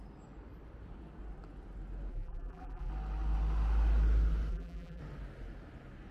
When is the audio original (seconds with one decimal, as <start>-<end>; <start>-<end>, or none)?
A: 0.0-2.1; 2.9-4.5; 5.0-6.1